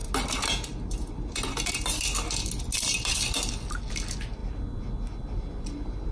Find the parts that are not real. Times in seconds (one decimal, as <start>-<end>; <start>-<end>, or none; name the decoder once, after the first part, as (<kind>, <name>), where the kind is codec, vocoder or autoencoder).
none

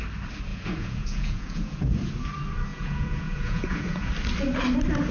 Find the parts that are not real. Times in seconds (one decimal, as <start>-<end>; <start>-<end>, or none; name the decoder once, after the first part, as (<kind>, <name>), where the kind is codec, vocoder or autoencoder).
0.5-2.1 (vocoder, Vocos); 2.7-4.1

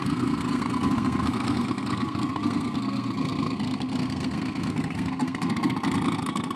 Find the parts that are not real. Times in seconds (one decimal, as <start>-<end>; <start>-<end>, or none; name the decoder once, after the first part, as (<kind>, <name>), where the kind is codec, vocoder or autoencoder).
0.0-6.6 (codec, SNAC)

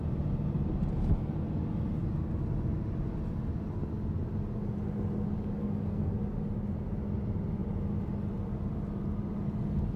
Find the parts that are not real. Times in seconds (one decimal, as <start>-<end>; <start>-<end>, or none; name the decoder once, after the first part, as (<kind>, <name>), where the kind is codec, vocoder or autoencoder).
5.6-6.1 (codec, SNAC)

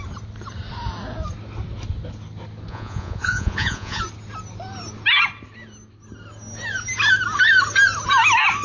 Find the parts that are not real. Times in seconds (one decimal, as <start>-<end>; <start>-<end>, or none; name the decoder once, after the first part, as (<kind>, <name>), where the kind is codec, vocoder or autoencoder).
2.7-4.0 (vocoder, Vocos)

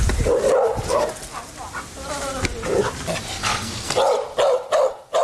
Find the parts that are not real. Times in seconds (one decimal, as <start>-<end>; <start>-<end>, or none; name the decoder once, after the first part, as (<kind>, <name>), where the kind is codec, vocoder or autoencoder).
3.4-3.9 (codec, SNAC)

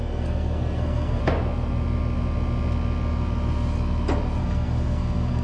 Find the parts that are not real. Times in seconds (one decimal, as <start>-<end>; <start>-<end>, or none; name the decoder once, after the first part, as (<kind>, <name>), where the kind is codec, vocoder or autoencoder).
0.0-1.2 (codec, SNAC); 4.4-5.4